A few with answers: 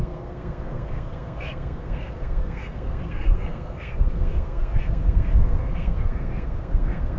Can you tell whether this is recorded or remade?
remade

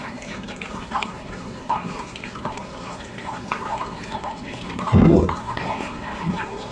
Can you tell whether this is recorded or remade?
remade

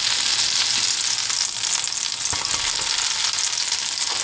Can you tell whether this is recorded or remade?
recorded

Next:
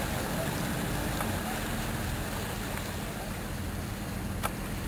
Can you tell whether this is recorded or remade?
recorded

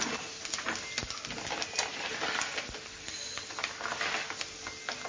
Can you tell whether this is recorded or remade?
recorded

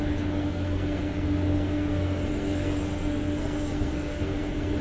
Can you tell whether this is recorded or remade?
remade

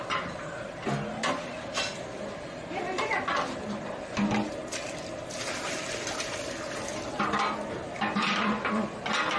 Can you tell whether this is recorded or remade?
recorded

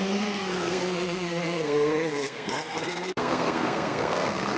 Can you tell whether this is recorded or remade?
remade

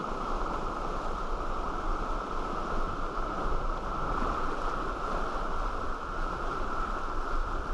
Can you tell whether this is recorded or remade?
recorded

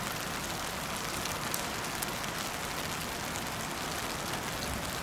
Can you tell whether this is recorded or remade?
recorded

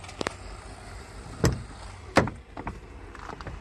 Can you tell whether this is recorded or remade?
recorded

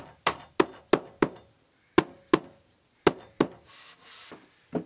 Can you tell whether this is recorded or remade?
recorded